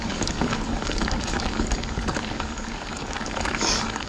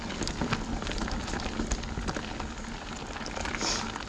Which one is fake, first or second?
first